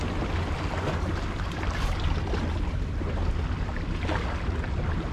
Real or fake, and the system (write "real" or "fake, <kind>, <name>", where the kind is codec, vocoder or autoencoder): real